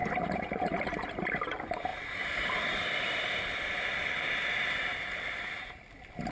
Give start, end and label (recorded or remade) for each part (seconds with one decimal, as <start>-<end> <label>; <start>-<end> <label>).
0.0-1.0 remade; 1.0-4.9 recorded; 4.9-5.7 remade; 5.7-6.3 recorded